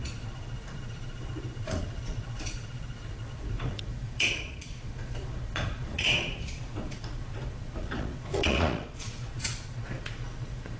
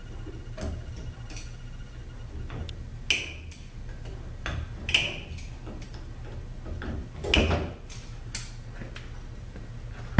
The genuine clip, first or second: second